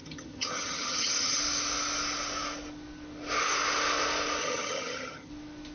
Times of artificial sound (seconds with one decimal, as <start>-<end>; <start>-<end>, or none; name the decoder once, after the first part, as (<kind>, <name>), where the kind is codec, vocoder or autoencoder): 0.0-1.4 (vocoder, HiFi-GAN); 4.4-5.3